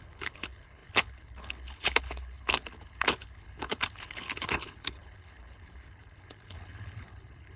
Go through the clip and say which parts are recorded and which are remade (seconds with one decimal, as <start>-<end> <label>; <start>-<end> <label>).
0.0-7.6 remade